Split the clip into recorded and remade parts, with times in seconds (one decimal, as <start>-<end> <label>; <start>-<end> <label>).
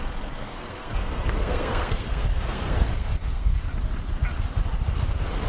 0.0-0.4 recorded; 0.4-3.7 remade; 3.7-5.5 recorded